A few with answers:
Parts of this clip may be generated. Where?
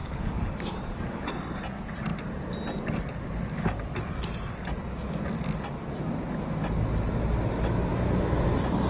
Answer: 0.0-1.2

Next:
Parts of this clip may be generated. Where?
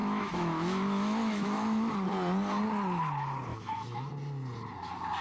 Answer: 0.0-1.9; 3.5-4.1